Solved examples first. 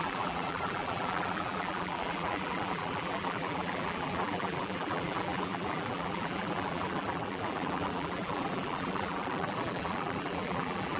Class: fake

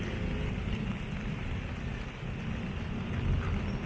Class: real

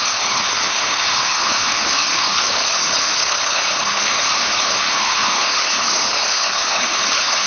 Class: fake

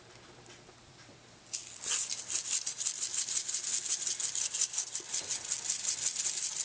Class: real